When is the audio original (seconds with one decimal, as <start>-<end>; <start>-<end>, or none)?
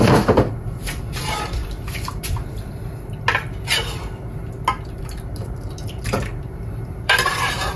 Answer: 1.6-5.0